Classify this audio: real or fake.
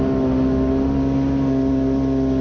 real